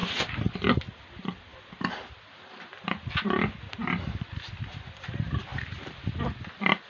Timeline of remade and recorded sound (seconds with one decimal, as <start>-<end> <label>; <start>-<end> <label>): 0.0-6.9 recorded